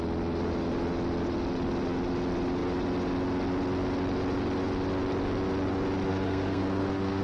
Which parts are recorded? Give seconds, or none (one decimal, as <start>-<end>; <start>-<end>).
0.0-6.1